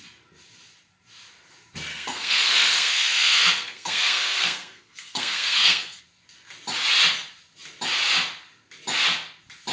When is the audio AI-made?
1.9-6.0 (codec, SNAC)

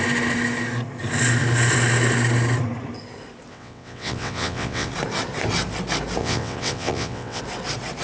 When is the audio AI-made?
3.5-4.9 (vocoder, WaveNeXt); 6.2-7.4